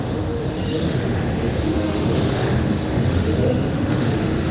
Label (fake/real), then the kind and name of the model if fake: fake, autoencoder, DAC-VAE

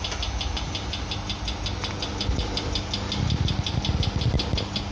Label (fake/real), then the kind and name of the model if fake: real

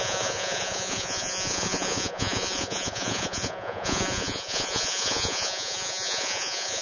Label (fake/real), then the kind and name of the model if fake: fake, vocoder, Vocos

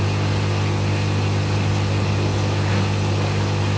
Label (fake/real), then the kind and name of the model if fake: real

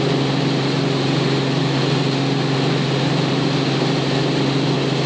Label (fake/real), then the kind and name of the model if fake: real